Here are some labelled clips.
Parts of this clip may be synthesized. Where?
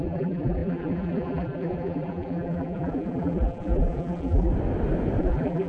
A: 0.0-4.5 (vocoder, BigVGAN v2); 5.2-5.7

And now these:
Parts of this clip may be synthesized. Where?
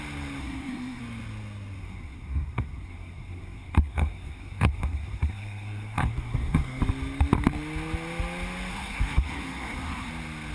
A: 0.4-1.0 (codec, SNAC); 1.8-6.8; 8.7-10.1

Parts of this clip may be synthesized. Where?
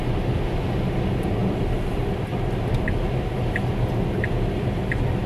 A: none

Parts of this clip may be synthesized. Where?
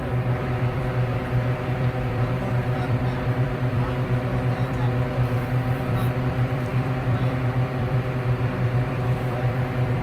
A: 0.0-10.0 (vocoder, BigVGAN v2)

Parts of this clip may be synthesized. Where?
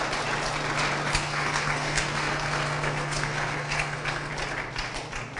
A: 1.1-4.3 (codec, SNAC)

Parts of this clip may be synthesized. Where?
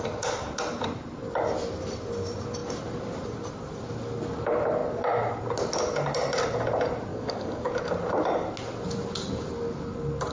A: 7.1-7.7 (codec, DAC)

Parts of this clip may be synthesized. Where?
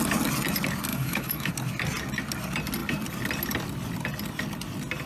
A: 0.9-1.5 (autoencoder, DAC-VAE)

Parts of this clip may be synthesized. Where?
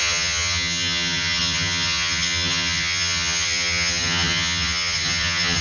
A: 0.0-5.6 (vocoder, HiFi-GAN)